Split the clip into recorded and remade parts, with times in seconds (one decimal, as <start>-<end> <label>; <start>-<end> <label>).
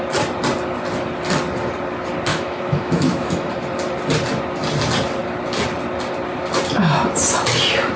0.0-2.3 recorded; 2.3-3.5 remade; 3.5-8.0 recorded